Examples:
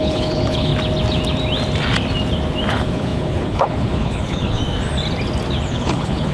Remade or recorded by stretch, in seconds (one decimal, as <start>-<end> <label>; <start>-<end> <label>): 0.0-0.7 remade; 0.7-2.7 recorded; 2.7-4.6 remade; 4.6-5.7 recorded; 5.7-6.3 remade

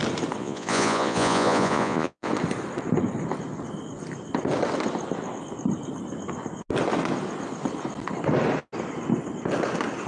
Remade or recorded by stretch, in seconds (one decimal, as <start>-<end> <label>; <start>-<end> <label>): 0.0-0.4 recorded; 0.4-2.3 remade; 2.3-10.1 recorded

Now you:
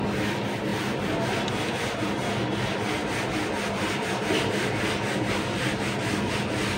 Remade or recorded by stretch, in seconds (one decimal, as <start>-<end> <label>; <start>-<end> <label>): 0.0-6.8 recorded

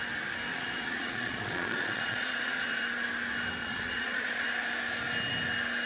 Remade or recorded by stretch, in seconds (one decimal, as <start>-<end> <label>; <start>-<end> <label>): 0.0-0.5 recorded; 0.5-2.8 remade; 2.8-3.6 recorded; 3.6-4.4 remade; 4.4-5.9 recorded